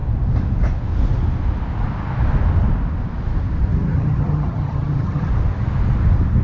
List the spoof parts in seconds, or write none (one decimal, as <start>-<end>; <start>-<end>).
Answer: 3.9-5.3